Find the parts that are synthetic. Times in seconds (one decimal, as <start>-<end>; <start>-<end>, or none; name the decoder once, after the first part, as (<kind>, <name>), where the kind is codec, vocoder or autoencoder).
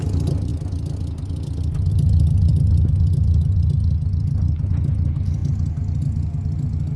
none